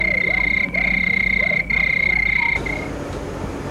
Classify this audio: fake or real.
real